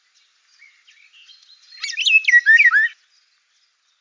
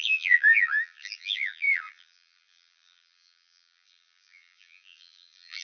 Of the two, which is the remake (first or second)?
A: second